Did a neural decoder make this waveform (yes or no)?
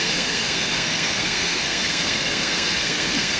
yes